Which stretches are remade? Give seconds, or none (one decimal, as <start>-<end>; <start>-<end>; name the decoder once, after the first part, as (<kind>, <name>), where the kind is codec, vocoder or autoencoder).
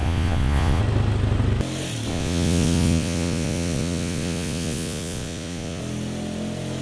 0.0-0.8 (vocoder, Vocos); 2.1-5.8